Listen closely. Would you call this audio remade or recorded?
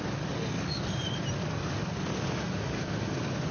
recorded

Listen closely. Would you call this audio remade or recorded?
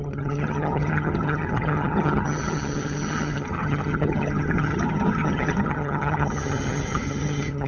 remade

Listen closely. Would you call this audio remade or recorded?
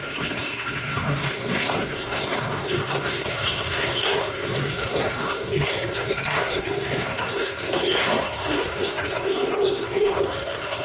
remade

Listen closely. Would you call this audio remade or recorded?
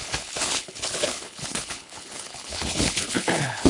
remade